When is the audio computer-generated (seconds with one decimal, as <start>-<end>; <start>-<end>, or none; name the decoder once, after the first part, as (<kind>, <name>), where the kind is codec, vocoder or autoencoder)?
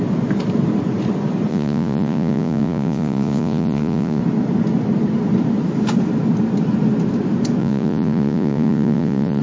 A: 1.5-4.2 (vocoder, Vocos); 7.6-9.4